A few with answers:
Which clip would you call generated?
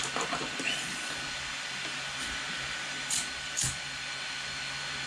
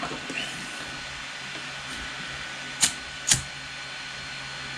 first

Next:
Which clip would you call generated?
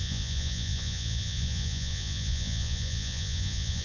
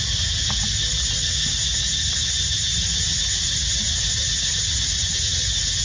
first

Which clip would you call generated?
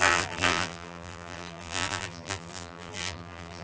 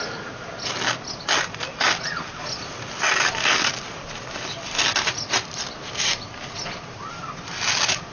first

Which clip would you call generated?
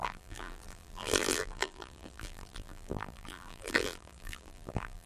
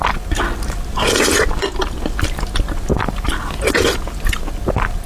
first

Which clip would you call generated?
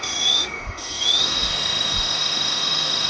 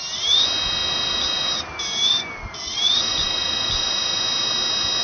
first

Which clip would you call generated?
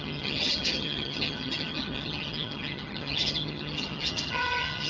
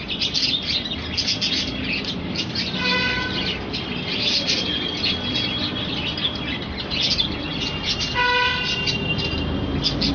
first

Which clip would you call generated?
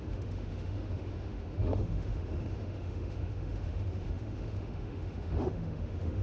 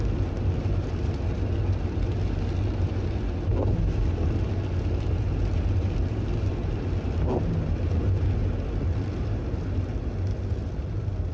first